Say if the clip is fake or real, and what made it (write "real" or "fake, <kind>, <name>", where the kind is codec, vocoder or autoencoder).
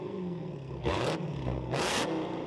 fake, codec, SNAC